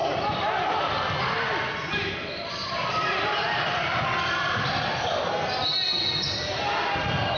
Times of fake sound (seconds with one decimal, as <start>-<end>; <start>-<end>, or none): 0.0-2.1; 2.6-5.2